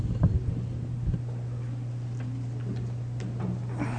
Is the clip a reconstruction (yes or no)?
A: no